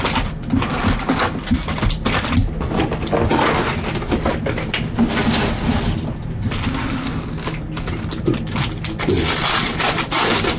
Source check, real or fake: real